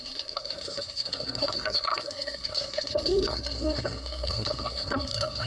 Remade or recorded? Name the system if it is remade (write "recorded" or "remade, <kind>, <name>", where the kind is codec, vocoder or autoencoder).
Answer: remade, codec, SNAC